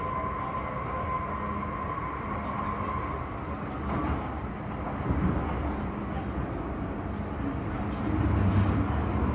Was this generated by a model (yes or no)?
no